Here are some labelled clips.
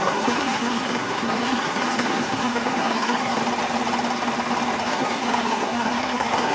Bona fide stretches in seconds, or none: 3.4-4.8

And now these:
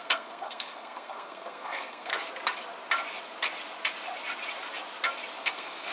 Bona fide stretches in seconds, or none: 2.1-5.4

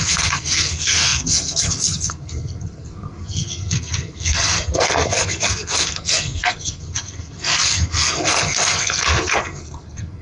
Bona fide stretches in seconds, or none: none

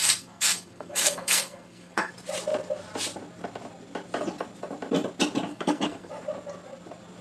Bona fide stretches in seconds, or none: 2.1-5.5; 6.1-7.2